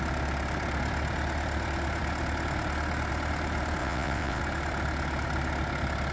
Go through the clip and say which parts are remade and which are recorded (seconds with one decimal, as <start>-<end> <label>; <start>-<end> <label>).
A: 0.0-3.8 recorded; 3.8-4.4 remade; 4.4-6.1 recorded